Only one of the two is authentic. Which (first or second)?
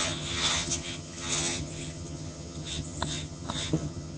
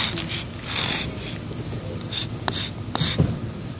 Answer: second